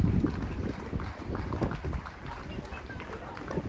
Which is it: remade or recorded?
recorded